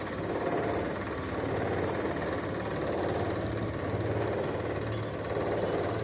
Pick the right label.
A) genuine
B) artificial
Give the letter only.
A